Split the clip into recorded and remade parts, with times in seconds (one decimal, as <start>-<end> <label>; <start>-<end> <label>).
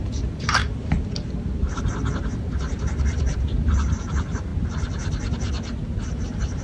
0.0-0.6 remade; 0.6-1.7 recorded; 1.7-4.5 remade; 4.5-6.1 recorded; 6.1-6.6 remade